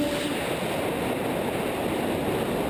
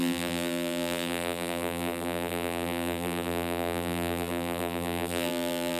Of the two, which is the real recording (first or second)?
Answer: first